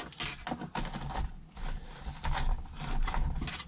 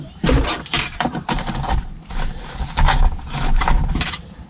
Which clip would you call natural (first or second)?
first